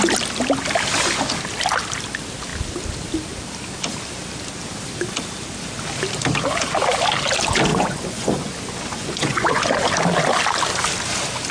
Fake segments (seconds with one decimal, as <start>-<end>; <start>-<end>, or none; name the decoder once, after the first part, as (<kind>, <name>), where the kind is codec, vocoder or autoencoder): 7.7-8.5 (vocoder, Vocos); 9.0-9.6

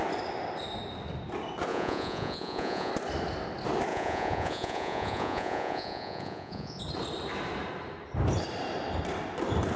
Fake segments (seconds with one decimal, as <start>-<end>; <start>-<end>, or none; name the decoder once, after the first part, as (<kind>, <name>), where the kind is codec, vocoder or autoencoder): 1.7-2.9 (vocoder, Vocos); 3.9-6.8

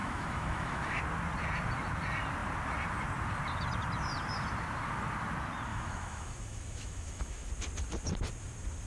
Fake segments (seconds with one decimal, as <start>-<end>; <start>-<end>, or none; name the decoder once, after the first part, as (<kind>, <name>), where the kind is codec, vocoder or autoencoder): 0.0-1.0 (autoencoder, DAC-VAE); 5.7-7.5

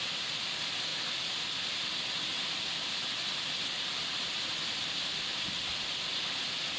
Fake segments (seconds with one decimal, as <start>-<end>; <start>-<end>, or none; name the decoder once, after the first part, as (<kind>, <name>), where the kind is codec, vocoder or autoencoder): none

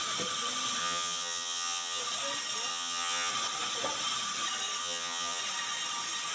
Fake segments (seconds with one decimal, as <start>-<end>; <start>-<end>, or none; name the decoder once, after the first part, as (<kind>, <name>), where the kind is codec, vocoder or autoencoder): 0.8-2.0 (vocoder, HiFi-GAN); 2.7-3.3; 4.8-5.4

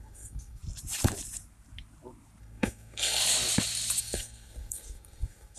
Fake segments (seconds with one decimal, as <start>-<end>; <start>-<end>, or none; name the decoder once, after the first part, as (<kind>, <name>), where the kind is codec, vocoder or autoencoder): 0.0-0.6 (codec, SNAC); 2.4-3.2; 4.0-5.6

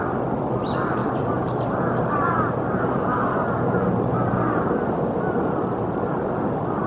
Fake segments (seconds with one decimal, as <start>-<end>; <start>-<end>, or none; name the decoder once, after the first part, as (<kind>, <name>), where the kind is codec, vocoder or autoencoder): 1.0-4.7 (vocoder, BigVGAN v2)